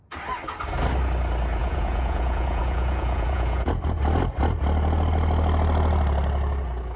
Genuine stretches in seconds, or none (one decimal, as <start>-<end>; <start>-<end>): 0.0-1.6; 3.8-7.0